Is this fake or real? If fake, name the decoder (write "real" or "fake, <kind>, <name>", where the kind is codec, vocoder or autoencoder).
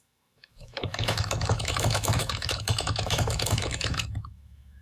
fake, autoencoder, DAC-VAE